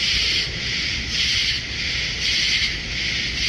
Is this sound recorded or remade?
recorded